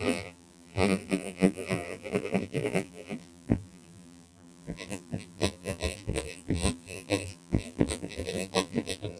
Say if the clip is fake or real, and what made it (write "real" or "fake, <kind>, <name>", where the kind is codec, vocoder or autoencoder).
fake, vocoder, BigVGAN v2